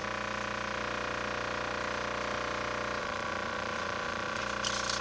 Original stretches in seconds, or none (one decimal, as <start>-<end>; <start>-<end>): 0.0-3.0; 4.4-5.0